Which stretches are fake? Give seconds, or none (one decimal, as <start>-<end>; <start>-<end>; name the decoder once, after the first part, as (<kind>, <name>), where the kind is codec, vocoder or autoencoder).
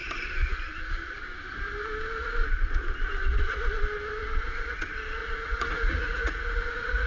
5.2-7.1 (vocoder, Vocos)